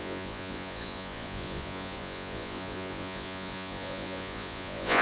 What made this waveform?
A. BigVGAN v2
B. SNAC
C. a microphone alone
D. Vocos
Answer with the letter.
D